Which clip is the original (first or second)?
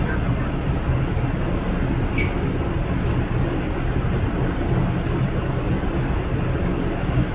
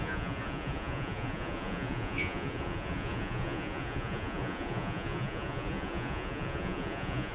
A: first